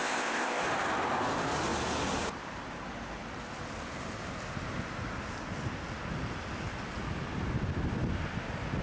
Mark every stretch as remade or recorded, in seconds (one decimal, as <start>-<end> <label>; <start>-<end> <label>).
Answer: 0.0-0.6 remade; 0.6-8.8 recorded